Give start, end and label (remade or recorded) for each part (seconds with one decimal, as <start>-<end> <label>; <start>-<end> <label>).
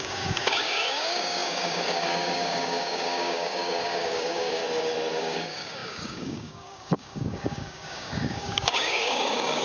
0.0-4.6 remade; 4.6-5.2 recorded; 5.2-9.6 remade